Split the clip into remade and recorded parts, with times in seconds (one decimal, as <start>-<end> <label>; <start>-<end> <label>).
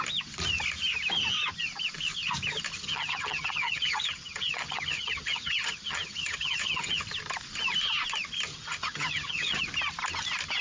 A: 0.0-2.8 recorded; 2.8-7.0 remade; 7.0-8.5 recorded; 8.5-9.6 remade; 9.6-10.6 recorded